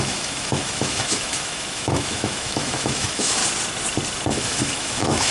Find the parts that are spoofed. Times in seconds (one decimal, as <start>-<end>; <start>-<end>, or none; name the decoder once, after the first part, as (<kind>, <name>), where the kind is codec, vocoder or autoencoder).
0.0-3.4 (autoencoder, DAC-VAE); 4.3-5.3